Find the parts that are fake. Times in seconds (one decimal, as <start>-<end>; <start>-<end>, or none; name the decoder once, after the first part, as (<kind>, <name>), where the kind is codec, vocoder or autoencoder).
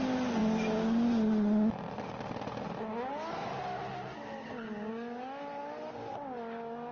none